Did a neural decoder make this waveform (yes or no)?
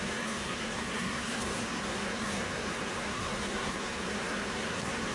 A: yes